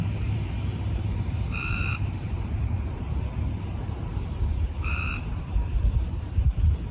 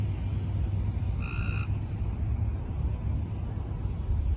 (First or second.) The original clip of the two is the second